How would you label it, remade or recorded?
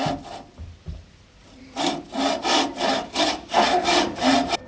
recorded